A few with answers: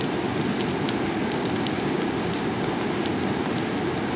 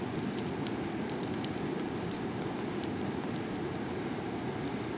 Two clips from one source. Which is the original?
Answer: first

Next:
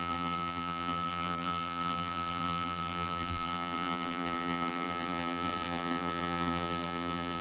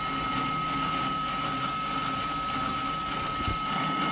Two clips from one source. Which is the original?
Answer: second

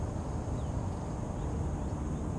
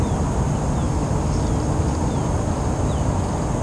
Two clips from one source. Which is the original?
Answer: second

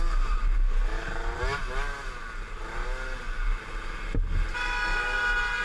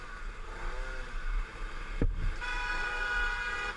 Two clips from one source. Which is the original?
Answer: first